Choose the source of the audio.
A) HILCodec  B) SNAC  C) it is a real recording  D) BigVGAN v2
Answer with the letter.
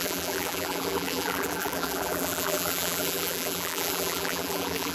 D